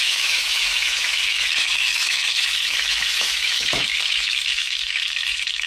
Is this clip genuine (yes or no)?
no